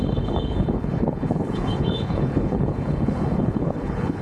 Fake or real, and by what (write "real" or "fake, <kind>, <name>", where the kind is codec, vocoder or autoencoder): fake, codec, HILCodec